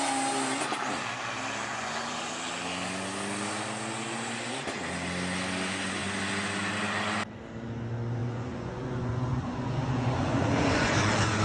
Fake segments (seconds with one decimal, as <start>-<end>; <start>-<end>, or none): 1.7-2.3; 8.2-11.4